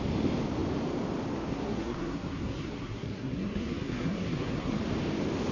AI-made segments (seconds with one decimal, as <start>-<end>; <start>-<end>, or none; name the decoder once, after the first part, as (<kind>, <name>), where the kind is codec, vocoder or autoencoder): 1.5-4.8 (codec, SNAC)